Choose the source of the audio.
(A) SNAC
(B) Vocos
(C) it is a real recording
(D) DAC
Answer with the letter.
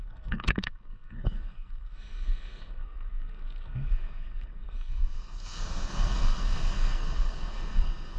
A